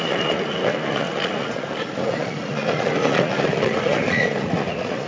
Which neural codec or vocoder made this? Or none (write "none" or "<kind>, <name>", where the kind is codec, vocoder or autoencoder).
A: vocoder, Vocos